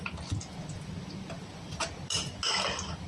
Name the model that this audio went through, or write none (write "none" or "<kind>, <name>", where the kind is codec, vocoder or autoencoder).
none